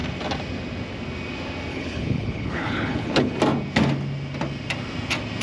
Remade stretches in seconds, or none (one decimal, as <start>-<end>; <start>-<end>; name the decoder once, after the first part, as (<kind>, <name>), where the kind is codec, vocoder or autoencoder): 1.7-3.3 (codec, HILCodec)